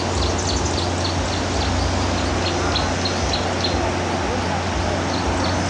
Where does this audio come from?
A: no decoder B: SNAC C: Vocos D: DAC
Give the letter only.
A